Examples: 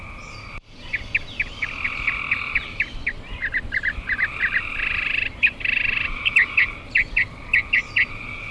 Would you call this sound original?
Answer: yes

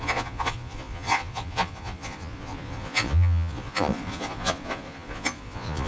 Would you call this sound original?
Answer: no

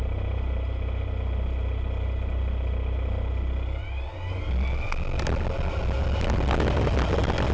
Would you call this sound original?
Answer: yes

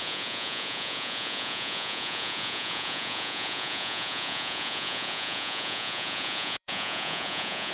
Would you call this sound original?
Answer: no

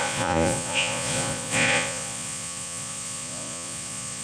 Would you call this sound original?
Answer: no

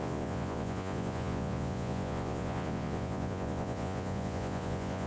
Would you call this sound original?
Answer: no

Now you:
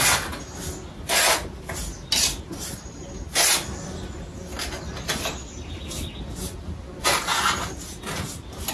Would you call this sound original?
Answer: yes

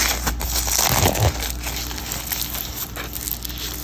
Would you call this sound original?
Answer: yes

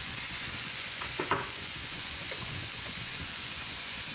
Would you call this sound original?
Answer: no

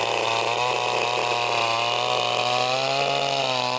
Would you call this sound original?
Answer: yes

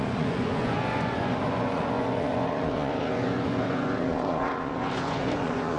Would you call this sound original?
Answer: no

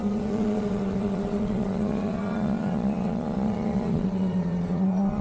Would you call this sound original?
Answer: no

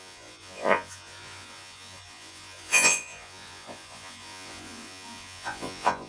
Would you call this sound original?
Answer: no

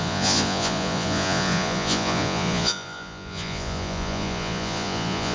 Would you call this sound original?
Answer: no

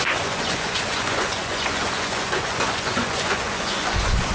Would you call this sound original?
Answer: no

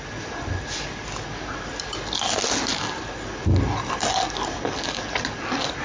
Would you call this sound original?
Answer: yes